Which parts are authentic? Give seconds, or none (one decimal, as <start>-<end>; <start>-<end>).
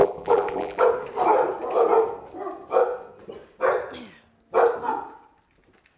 0.8-6.0